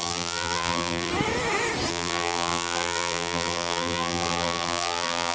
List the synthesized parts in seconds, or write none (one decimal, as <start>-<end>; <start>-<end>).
0.0-1.1; 1.9-5.3